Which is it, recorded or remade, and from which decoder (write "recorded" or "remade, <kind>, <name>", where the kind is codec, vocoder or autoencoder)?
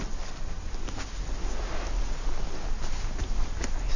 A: recorded